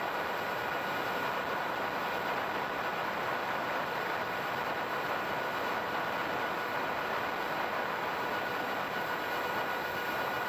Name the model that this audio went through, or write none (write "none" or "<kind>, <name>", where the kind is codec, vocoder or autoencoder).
none